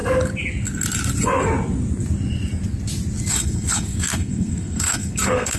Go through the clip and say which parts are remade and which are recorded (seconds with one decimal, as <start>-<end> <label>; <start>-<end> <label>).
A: 0.0-3.3 recorded; 3.3-5.6 remade